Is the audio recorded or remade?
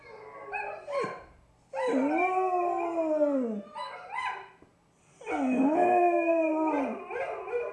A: recorded